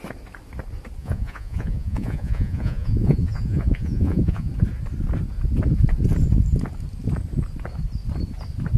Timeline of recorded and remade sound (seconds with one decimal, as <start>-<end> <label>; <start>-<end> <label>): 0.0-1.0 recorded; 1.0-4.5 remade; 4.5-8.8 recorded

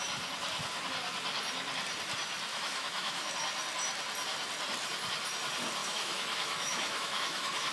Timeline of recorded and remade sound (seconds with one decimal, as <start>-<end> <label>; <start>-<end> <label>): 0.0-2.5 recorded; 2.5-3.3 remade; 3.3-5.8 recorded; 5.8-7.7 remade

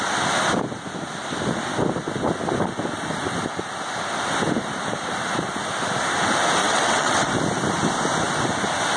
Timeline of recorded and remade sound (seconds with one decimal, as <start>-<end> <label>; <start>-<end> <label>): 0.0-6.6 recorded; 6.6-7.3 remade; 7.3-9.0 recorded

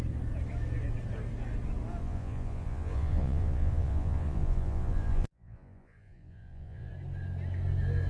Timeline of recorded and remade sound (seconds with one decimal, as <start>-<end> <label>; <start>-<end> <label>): 0.0-2.0 recorded; 2.0-6.9 remade; 6.9-8.1 recorded

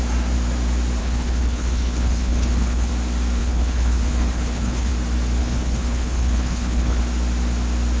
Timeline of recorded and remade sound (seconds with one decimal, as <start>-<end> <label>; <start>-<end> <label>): 0.0-1.0 recorded; 1.0-2.9 remade; 2.9-3.4 recorded; 3.4-4.9 remade; 4.9-5.4 recorded; 5.4-7.0 remade; 7.0-8.0 recorded

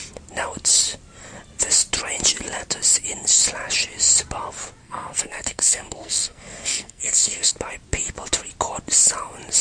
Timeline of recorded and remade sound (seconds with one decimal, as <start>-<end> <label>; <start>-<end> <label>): 0.0-4.8 recorded; 4.8-7.5 remade; 7.5-9.6 recorded